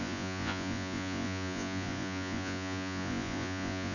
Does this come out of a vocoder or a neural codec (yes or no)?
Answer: yes